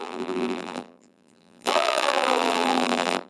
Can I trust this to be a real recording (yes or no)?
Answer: no